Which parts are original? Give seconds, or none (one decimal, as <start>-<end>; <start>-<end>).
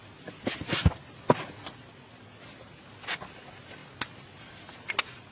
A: 0.0-5.3